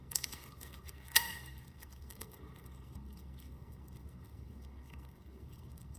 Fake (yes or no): yes